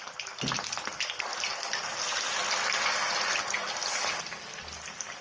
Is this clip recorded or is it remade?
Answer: recorded